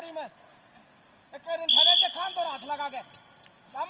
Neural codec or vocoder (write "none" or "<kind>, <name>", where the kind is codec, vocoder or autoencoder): none